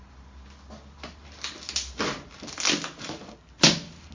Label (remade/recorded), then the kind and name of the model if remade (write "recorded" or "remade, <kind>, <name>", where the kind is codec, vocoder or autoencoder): recorded